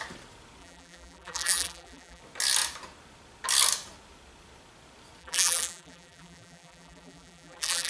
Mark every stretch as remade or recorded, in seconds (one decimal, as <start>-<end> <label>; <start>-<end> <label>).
0.0-0.6 recorded; 0.6-2.2 remade; 2.2-5.2 recorded; 5.2-7.9 remade